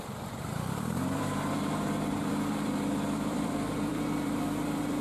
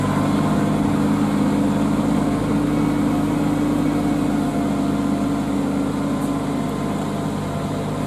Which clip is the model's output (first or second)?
first